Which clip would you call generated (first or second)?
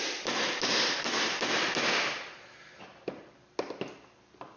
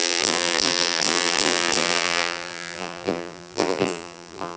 second